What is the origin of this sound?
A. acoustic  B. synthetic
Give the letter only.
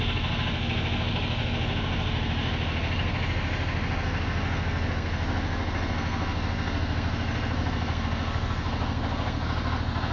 B